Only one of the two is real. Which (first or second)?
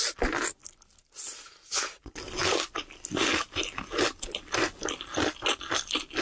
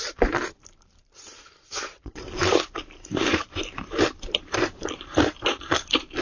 first